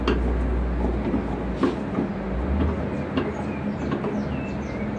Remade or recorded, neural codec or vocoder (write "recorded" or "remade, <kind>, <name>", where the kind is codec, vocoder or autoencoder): recorded